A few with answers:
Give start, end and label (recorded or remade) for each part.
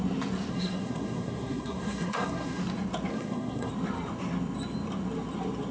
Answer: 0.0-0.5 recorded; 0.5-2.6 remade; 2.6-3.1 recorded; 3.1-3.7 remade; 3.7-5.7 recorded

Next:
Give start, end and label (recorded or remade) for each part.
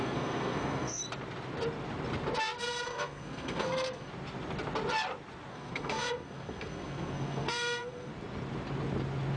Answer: 0.0-1.0 remade; 1.0-2.6 recorded; 2.6-4.1 remade; 4.1-5.5 recorded; 5.5-8.1 remade; 8.1-9.4 recorded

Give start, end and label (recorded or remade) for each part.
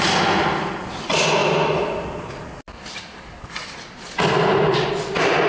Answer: 0.0-5.5 recorded